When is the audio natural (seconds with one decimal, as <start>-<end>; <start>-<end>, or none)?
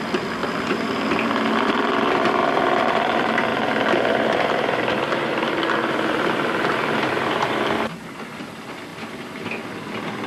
0.0-0.4; 1.7-2.4; 3.1-3.5; 7.5-8.9; 9.5-10.3